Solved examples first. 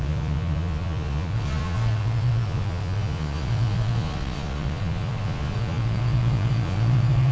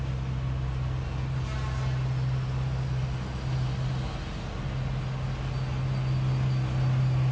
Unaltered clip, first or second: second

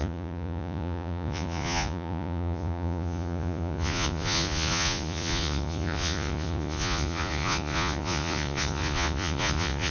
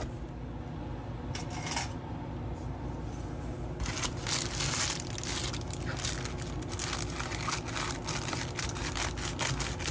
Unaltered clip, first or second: second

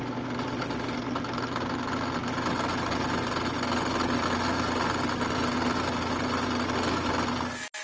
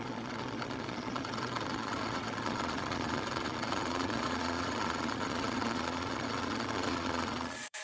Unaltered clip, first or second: first